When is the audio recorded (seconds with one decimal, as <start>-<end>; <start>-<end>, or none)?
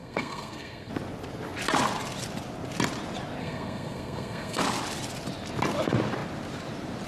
0.9-3.4; 4.6-7.1